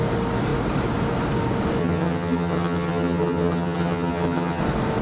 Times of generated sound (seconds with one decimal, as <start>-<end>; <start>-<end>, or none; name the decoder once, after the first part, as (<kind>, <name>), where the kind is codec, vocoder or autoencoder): 1.8-4.6 (vocoder, HiFi-GAN)